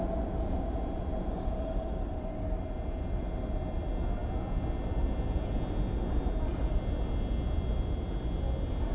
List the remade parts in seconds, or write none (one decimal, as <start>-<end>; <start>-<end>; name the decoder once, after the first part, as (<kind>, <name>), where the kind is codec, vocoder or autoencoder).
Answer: 1.3-2.6 (codec, DAC)